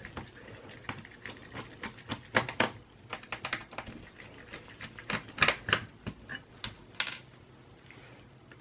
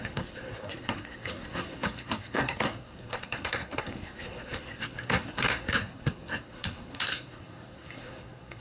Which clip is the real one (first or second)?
first